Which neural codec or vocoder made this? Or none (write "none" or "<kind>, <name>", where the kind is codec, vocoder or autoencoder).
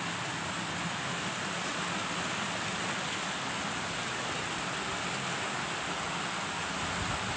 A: none